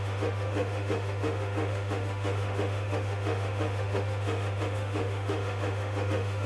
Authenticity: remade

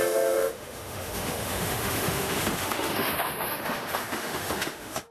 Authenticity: remade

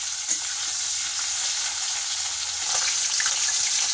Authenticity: recorded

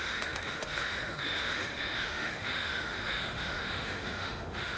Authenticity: remade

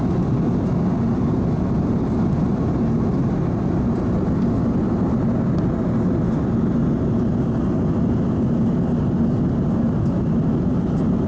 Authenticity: recorded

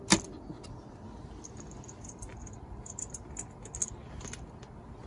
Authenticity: recorded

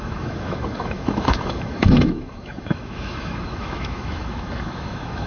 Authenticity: remade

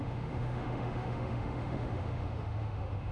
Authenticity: remade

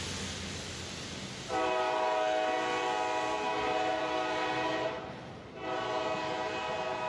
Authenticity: recorded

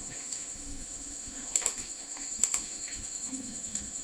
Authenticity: remade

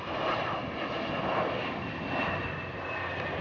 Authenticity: recorded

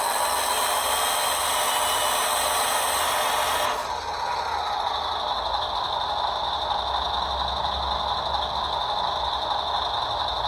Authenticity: recorded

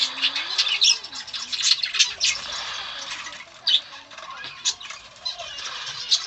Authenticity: recorded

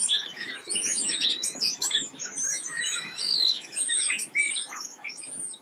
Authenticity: remade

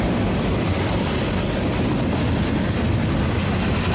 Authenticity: recorded